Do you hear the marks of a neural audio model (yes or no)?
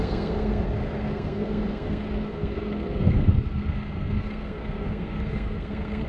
yes